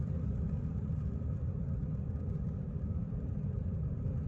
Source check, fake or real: fake